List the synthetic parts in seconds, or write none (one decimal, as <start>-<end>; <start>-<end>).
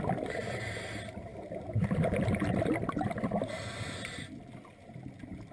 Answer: none